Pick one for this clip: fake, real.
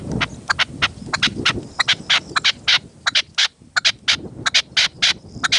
real